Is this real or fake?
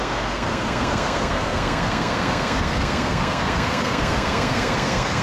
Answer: fake